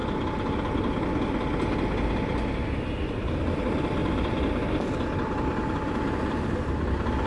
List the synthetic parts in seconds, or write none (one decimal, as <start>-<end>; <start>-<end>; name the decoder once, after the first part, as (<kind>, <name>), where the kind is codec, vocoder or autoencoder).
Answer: 2.9-7.3 (vocoder, BigVGAN v2)